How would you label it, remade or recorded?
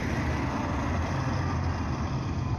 recorded